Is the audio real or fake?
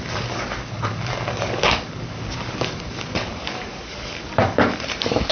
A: fake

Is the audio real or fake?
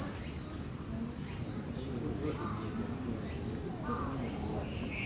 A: real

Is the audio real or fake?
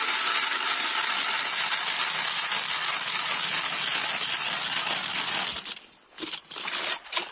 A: real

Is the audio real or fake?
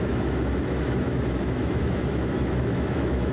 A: fake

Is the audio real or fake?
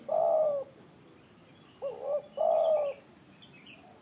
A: real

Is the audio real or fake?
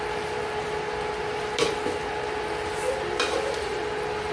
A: real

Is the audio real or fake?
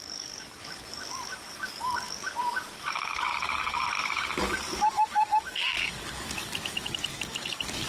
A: fake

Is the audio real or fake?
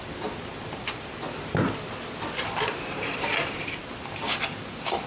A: fake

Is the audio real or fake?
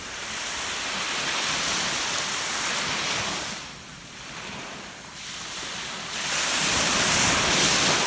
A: real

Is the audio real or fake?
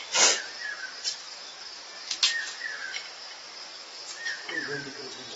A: real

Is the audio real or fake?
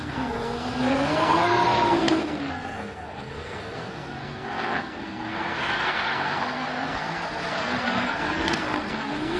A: fake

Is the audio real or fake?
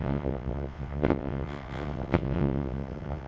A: fake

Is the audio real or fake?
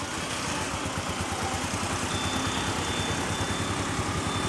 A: real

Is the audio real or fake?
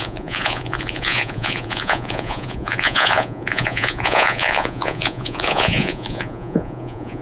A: fake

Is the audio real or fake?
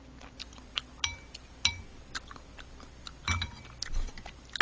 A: real